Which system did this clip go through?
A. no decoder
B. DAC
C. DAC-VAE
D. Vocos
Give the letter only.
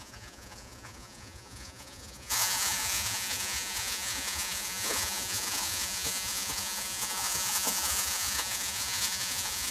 D